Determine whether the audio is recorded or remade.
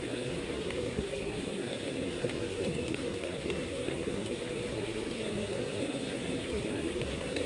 remade